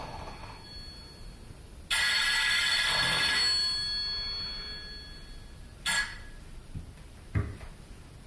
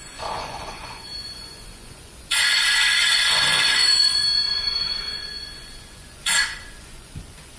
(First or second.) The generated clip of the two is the second